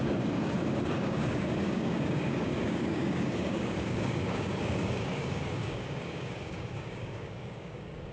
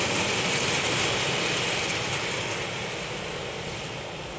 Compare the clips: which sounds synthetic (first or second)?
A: first